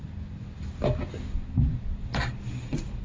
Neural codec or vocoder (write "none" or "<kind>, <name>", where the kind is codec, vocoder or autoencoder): none